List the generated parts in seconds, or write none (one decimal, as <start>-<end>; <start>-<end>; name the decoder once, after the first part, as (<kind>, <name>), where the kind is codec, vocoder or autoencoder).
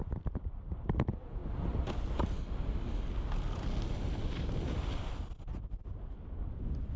none